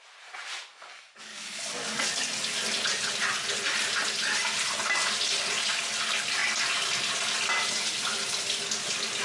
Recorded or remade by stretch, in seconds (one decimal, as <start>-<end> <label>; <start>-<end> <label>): 0.0-0.7 recorded; 0.7-2.1 remade; 2.1-9.2 recorded